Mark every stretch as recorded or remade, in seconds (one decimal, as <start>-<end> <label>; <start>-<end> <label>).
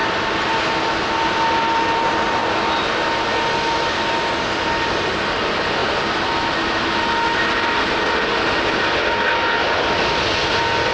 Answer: 0.0-10.9 recorded